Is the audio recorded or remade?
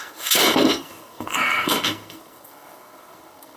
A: remade